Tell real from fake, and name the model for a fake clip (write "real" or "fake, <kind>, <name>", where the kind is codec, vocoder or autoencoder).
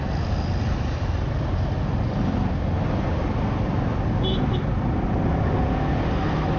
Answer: real